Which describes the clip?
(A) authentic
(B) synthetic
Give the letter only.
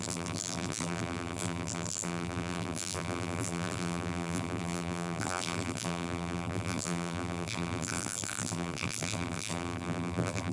B